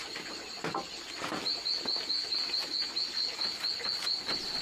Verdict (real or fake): real